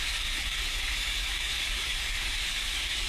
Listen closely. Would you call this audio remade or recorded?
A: remade